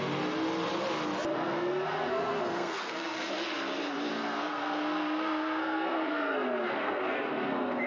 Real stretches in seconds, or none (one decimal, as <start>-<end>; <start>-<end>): 0.0-1.3; 3.3-4.1